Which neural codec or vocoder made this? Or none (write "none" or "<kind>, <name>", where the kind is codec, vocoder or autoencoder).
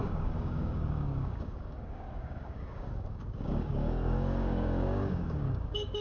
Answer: codec, DAC